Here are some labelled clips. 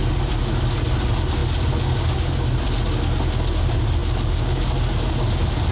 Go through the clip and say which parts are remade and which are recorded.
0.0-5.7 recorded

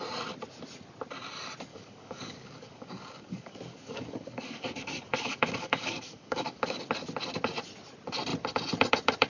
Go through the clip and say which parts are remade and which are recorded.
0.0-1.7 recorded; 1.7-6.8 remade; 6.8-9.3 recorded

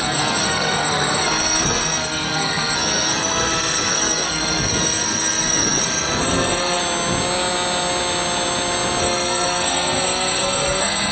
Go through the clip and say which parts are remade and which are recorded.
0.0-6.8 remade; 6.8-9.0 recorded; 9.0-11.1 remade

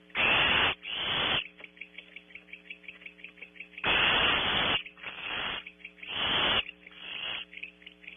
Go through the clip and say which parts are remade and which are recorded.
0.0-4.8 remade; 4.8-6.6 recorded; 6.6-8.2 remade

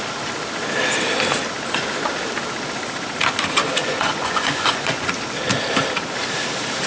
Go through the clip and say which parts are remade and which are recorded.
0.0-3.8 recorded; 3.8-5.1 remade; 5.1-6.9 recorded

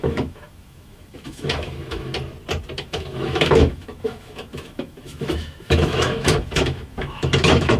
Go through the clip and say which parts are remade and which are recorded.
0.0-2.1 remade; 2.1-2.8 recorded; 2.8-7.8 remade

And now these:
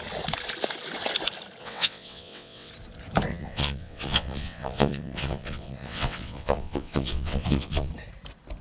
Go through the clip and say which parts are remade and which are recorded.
0.0-1.6 recorded; 1.6-2.7 remade; 2.7-3.3 recorded; 3.3-7.9 remade; 7.9-8.6 recorded

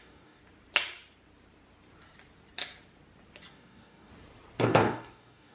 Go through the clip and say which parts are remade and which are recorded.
0.0-0.4 remade; 0.4-3.5 recorded; 3.5-4.1 remade; 4.1-4.6 recorded; 4.6-5.5 remade